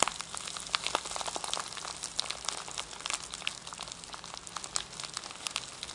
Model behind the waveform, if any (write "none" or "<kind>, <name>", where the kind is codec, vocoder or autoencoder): none